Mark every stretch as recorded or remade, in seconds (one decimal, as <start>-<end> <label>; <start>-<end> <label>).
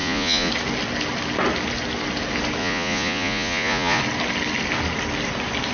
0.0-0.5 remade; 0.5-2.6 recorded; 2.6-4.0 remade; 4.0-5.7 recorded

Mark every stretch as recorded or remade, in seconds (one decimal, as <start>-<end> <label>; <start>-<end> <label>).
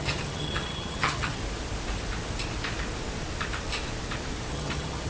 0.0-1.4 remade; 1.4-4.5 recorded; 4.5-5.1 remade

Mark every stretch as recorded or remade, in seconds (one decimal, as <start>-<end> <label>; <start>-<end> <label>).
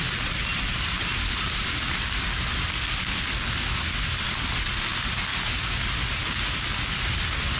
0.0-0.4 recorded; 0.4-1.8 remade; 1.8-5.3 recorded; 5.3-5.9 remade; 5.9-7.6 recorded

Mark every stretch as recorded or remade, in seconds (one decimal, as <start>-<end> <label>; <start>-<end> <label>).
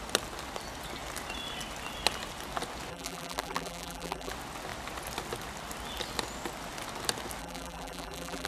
0.0-2.9 recorded; 2.9-4.3 remade; 4.3-7.4 recorded; 7.4-8.5 remade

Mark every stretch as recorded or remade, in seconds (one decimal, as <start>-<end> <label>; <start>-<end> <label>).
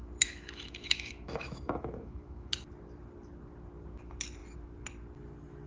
0.0-2.5 remade; 2.5-5.7 recorded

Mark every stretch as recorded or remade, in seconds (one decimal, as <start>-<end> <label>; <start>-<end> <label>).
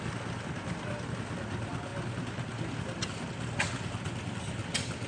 0.0-5.1 recorded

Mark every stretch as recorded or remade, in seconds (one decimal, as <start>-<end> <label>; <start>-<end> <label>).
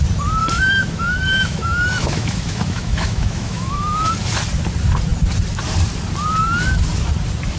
0.0-0.4 recorded; 0.4-4.1 remade; 4.1-7.6 recorded